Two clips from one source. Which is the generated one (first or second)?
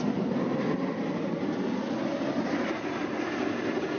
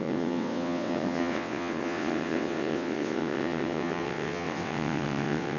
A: second